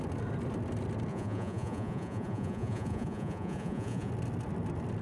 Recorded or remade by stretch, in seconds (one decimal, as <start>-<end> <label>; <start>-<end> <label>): 0.0-1.1 recorded; 1.1-4.1 remade; 4.1-5.0 recorded